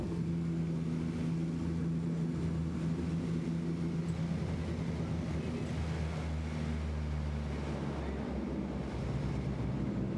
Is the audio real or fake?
real